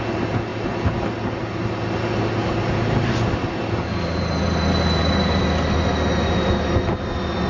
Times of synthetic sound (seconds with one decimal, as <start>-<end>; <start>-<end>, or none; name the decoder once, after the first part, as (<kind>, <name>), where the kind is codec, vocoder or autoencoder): none